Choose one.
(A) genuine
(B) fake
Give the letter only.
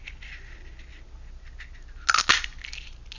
A